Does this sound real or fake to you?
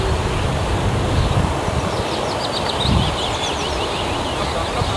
real